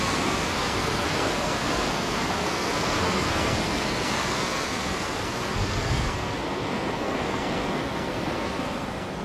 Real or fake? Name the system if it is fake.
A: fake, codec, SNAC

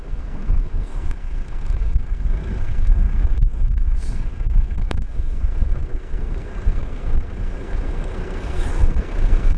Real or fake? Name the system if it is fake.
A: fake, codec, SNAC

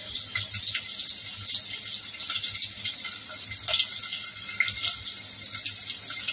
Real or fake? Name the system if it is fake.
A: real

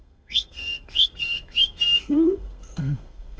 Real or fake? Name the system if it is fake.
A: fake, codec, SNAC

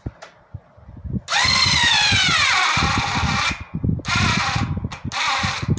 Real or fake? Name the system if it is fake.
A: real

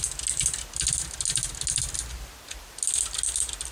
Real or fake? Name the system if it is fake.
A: real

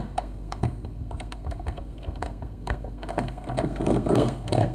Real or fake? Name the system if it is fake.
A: fake, codec, SNAC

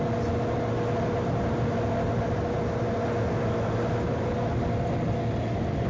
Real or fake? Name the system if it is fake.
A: real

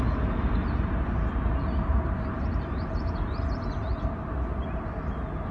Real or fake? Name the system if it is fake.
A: real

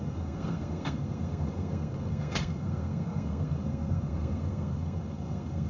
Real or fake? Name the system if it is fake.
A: fake, codec, SNAC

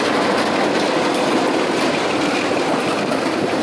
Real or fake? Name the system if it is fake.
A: real